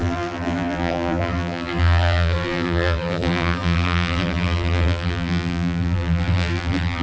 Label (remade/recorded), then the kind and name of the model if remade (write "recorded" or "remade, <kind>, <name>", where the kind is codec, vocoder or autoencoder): remade, vocoder, BigVGAN v2